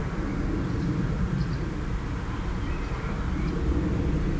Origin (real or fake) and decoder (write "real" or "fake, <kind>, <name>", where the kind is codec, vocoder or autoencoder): real